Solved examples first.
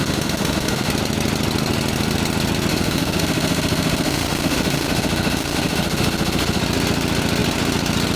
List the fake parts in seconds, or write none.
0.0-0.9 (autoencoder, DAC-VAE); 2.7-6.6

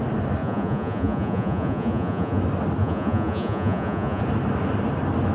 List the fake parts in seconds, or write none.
0.4-2.4 (vocoder, Vocos); 2.8-4.2

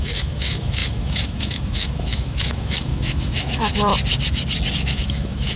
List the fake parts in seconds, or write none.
0.0-3.9 (autoencoder, DAC-VAE); 4.7-5.6

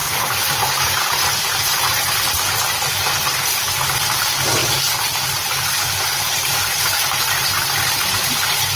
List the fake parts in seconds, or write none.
0.0-2.1 (vocoder, BigVGAN v2); 4.6-8.3

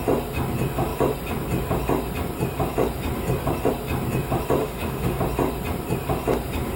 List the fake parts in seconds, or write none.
4.6-5.2 (autoencoder, DAC-VAE)

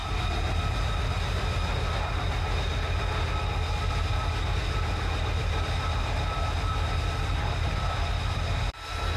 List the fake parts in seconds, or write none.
none

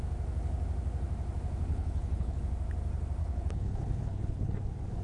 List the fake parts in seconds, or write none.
1.7-2.4 (codec, HILCodec); 3.2-4.6

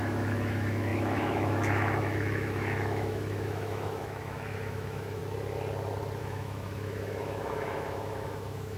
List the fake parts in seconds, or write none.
0.0-5.2 (autoencoder, DAC-VAE); 6.2-8.8